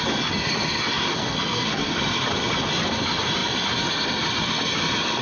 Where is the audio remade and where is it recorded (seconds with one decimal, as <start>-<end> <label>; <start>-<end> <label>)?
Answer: 0.0-1.1 recorded; 1.1-2.0 remade; 2.0-5.2 recorded